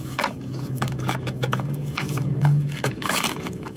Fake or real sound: fake